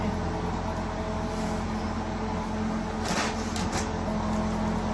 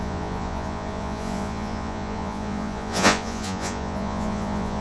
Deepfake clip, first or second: second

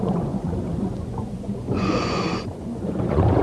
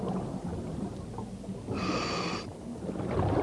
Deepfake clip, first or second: first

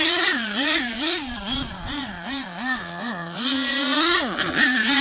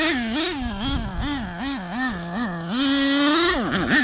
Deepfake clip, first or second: first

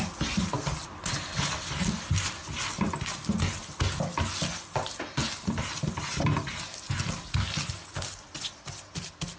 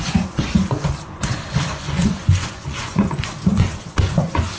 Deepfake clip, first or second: second